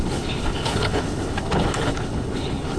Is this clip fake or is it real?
fake